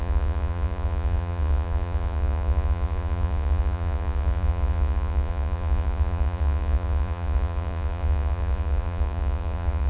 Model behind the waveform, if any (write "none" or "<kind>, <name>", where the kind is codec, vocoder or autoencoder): vocoder, Vocos